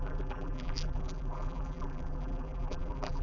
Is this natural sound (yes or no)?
no